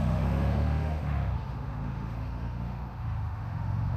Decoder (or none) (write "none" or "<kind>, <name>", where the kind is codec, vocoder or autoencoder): autoencoder, DAC-VAE